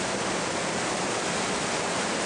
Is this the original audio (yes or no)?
yes